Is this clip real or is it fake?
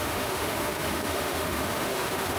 fake